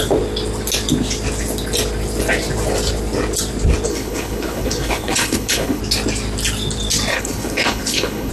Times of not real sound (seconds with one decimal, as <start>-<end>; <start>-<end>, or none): 3.9-5.8; 7.1-8.3